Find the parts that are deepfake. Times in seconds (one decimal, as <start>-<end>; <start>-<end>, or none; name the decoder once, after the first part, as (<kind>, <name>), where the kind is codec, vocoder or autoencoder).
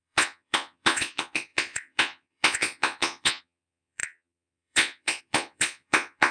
0.0-6.3 (vocoder, Vocos)